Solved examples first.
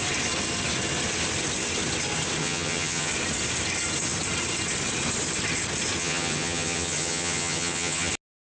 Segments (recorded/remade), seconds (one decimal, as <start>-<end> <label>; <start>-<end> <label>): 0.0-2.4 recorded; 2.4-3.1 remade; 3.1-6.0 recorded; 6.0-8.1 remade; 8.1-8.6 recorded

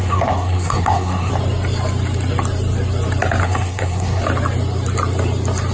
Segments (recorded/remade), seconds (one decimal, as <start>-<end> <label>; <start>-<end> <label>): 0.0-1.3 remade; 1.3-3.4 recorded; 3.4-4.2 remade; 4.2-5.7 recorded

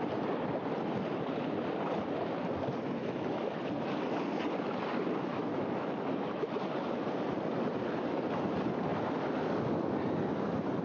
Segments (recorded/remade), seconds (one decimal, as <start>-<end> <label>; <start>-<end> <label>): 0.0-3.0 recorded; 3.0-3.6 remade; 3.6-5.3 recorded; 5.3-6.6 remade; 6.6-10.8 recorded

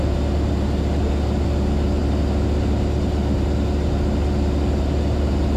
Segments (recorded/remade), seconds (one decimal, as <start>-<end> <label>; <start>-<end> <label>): 0.0-5.6 recorded

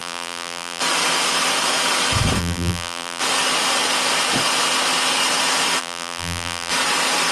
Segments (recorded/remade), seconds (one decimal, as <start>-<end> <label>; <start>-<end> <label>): 0.0-0.8 remade; 0.8-2.4 recorded; 2.4-3.2 remade; 3.2-5.8 recorded; 5.8-6.7 remade; 6.7-7.3 recorded

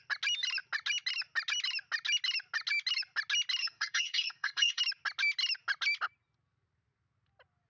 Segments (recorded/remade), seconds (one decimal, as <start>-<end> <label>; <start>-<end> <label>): 0.0-3.6 recorded; 3.6-4.8 remade; 4.8-7.7 recorded

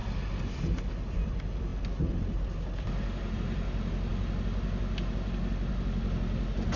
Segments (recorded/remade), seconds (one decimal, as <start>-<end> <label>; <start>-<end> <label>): 0.0-6.8 recorded